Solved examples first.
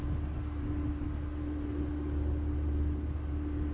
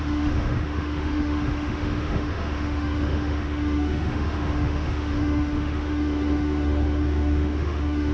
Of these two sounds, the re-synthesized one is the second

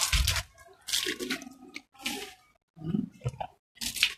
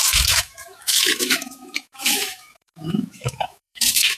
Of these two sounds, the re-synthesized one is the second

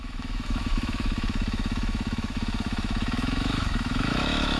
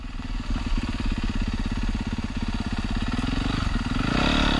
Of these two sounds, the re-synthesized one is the first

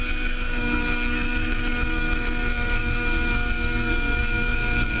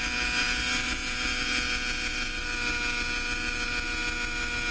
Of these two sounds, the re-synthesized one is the first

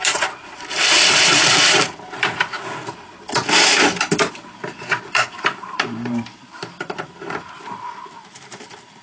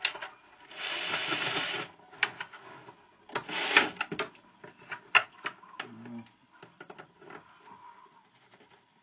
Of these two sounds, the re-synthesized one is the first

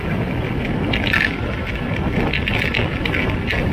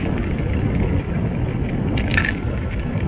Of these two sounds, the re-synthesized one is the second